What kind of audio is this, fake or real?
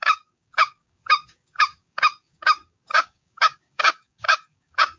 fake